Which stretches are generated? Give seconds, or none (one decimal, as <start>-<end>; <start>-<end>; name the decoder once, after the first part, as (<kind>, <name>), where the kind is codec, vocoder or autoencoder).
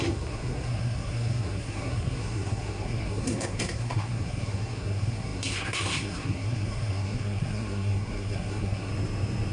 0.0-8.9 (codec, SNAC)